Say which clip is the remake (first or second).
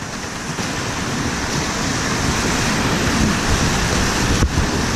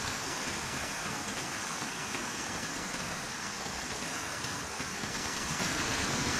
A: second